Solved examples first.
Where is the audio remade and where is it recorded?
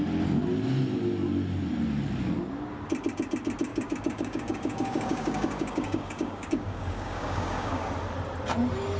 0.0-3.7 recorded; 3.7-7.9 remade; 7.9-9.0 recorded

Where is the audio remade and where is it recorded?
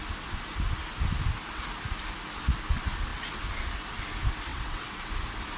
0.0-4.5 recorded; 4.5-5.1 remade; 5.1-5.6 recorded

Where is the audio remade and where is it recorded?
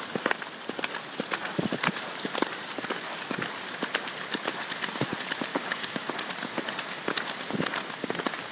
0.0-5.5 recorded; 5.5-6.1 remade; 6.1-8.5 recorded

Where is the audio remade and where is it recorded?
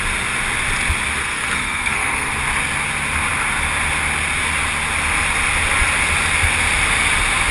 0.0-1.2 recorded; 1.2-2.3 remade; 2.3-7.5 recorded